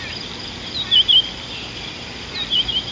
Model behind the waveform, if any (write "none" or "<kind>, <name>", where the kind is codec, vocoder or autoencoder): none